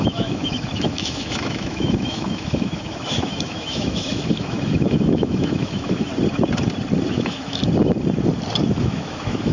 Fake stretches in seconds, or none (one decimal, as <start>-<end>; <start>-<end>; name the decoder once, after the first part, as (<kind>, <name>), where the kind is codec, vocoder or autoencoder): 0.0-6.1 (autoencoder, DAC-VAE); 7.1-7.6; 8.8-9.5